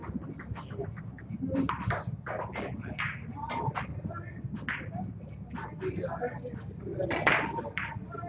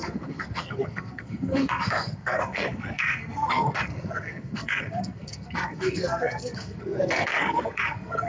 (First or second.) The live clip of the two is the first